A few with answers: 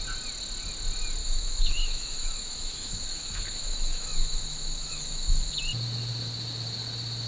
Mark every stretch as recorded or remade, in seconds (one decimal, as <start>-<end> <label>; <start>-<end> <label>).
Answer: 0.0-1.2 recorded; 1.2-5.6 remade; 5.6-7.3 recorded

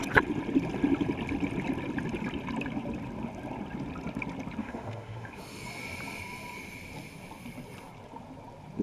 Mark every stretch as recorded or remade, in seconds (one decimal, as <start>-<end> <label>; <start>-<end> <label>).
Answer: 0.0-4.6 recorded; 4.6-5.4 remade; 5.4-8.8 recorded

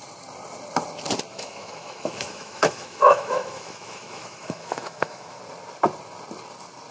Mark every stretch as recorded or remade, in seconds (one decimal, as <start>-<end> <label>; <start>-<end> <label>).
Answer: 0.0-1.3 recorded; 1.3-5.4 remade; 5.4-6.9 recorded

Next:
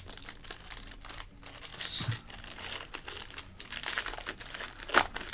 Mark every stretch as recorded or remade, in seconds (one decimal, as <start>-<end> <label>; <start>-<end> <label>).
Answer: 0.0-5.3 recorded